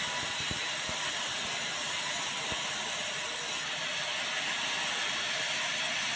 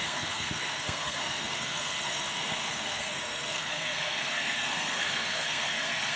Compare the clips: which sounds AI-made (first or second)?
second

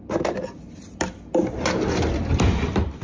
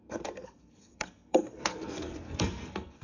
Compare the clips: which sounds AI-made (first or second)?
second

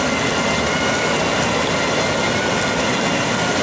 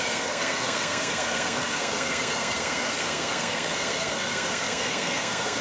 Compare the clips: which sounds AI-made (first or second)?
second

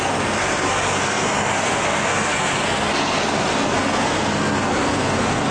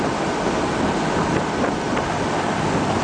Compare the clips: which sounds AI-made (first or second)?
first